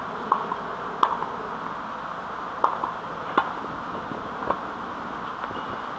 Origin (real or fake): real